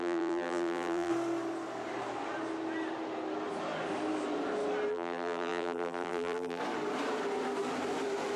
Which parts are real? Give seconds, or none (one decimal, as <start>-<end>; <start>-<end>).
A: 1.1-4.9; 6.6-8.4